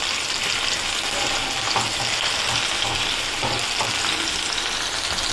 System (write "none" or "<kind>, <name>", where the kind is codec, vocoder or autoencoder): none